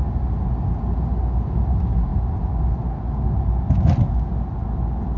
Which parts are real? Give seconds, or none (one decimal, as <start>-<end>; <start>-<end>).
0.0-5.2

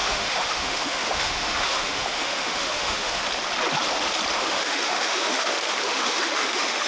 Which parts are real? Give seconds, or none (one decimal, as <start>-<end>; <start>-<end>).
3.2-4.4

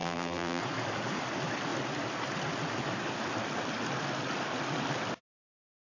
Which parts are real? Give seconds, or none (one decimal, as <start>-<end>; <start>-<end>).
0.6-5.8